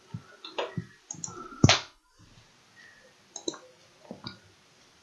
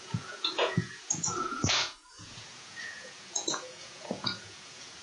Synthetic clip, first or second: second